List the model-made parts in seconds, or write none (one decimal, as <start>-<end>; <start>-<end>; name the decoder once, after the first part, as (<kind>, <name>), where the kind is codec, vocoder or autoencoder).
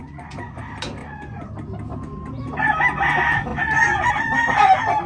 0.0-0.6 (vocoder, Vocos); 1.0-1.5; 3.5-4.1